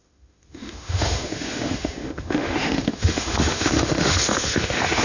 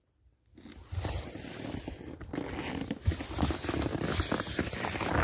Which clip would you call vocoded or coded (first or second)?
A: first